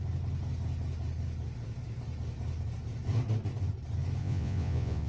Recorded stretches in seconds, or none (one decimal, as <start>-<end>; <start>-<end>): 0.0-4.2